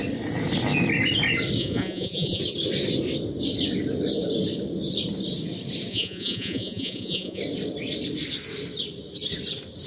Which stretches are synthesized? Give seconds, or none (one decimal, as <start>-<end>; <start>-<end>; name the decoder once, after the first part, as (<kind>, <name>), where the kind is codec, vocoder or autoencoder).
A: 1.6-2.4 (vocoder, Vocos); 5.9-7.4